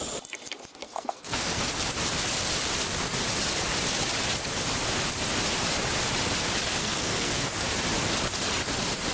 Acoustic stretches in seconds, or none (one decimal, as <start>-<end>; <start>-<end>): 0.0-0.8; 1.7-6.8; 7.5-9.1